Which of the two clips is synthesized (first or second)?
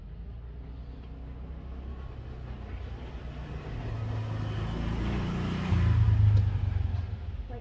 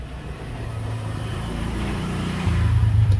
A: second